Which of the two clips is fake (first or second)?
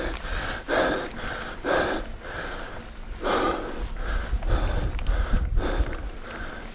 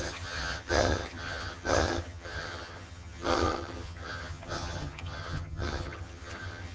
second